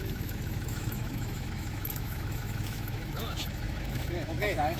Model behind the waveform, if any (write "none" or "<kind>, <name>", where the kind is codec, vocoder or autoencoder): autoencoder, DAC-VAE